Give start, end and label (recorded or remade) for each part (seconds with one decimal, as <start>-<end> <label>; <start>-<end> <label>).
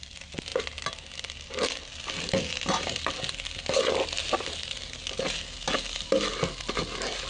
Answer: 0.0-7.3 recorded